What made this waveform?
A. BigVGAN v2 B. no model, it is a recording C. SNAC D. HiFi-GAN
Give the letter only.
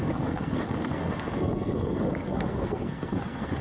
C